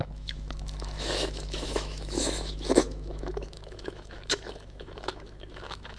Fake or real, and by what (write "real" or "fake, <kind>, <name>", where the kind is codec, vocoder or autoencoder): fake, autoencoder, DAC-VAE